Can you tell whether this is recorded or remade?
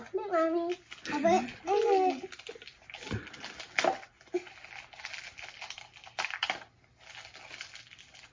recorded